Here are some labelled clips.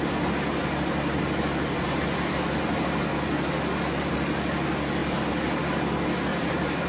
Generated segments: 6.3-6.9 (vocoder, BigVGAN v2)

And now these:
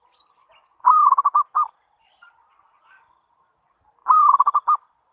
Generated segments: none

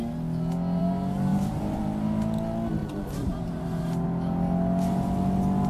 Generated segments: 1.3-1.8 (vocoder, BigVGAN v2); 2.8-3.6

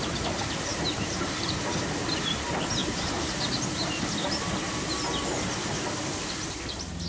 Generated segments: 0.7-1.6 (vocoder, BigVGAN v2); 2.8-4.5

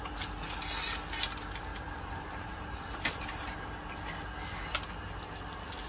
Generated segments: 1.7-3.6 (vocoder, BigVGAN v2)

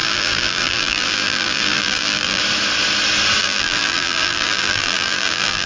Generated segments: 0.0-2.4 (vocoder, BigVGAN v2); 3.4-5.7

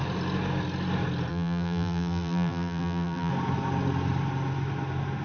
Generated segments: 1.3-3.3 (vocoder, BigVGAN v2)

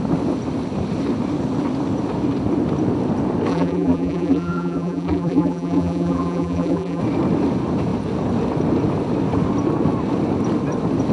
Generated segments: 3.5-7.0 (vocoder, BigVGAN v2)